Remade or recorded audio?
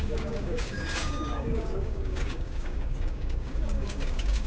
remade